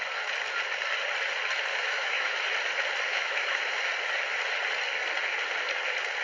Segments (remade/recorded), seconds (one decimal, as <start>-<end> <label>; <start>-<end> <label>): 0.0-1.7 recorded; 1.7-2.3 remade; 2.3-3.1 recorded; 3.1-3.8 remade; 3.8-6.2 recorded